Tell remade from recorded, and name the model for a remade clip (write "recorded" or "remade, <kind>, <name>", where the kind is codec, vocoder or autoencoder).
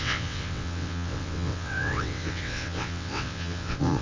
remade, vocoder, WaveNeXt